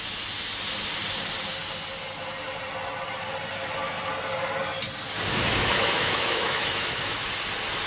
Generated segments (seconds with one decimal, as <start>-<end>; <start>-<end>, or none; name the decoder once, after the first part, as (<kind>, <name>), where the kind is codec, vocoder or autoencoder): 5.3-7.3 (autoencoder, DAC-VAE)